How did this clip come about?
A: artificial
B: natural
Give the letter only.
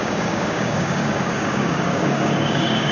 A